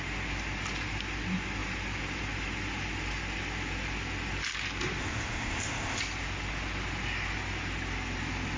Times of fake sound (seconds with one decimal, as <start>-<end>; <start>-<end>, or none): 5.0-6.0